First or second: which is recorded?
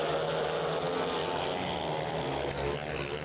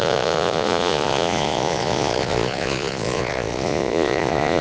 first